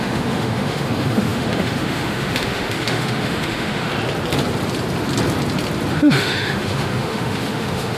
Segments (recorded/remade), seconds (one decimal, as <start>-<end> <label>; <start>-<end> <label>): 0.0-3.9 remade; 3.9-5.9 recorded; 5.9-8.0 remade